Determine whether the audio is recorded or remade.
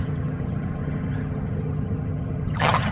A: remade